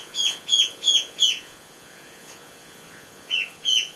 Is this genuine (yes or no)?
no